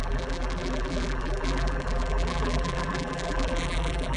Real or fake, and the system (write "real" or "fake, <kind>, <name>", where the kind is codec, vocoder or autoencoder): fake, vocoder, BigVGAN v2